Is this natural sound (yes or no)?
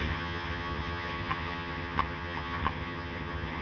no